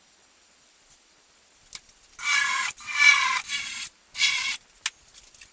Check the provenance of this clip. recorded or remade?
recorded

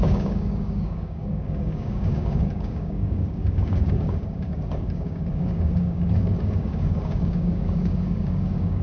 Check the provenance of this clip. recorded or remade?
remade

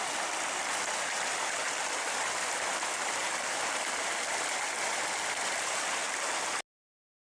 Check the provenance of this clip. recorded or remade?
recorded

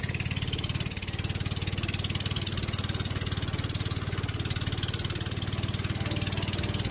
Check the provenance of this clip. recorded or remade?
recorded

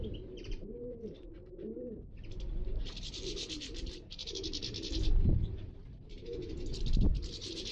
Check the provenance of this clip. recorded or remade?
remade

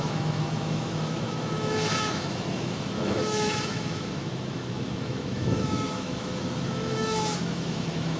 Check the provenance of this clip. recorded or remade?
remade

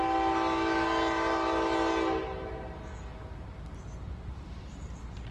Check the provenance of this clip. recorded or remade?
recorded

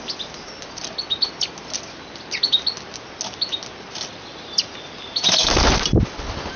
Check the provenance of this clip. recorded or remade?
recorded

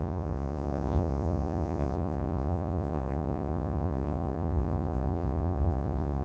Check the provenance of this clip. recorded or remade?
remade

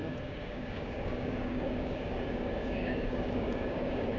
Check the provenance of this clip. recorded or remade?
remade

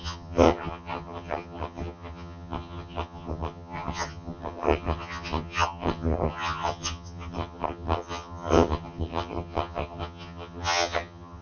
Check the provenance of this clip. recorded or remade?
remade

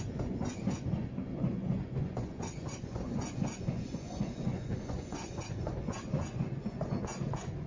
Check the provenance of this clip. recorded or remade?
remade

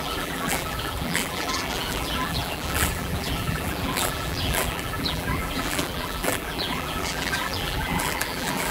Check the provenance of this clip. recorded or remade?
remade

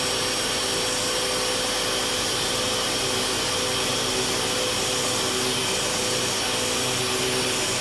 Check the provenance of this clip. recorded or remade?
recorded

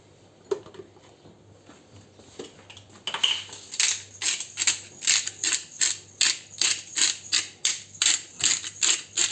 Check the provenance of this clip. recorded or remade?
recorded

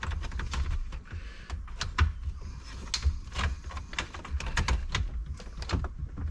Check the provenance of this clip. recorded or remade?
recorded